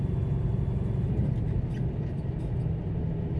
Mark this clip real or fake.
real